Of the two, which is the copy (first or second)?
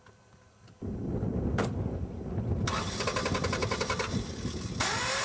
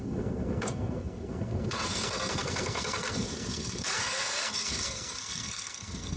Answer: second